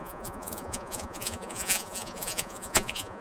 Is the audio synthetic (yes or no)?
yes